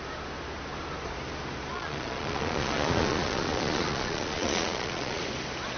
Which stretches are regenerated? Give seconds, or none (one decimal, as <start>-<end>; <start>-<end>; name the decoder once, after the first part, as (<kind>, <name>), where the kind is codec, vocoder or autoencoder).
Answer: 1.7-5.2 (vocoder, Vocos)